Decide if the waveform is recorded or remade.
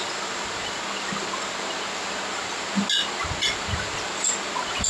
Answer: recorded